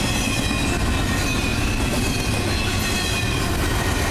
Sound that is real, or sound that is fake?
real